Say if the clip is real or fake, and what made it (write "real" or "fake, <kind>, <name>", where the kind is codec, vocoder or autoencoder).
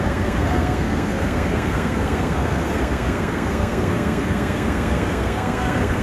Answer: fake, codec, SNAC